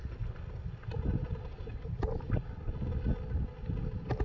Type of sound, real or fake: real